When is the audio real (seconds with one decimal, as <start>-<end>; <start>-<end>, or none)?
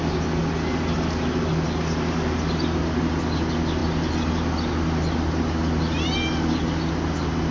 0.0-7.5